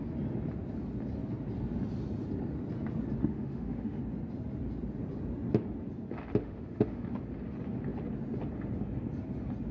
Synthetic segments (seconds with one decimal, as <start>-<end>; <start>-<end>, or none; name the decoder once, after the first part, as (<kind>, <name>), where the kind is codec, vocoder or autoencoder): 3.2-4.0 (autoencoder, DAC-VAE); 6.4-7.0